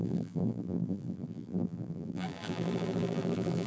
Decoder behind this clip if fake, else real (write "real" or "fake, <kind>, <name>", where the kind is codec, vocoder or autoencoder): fake, vocoder, BigVGAN v2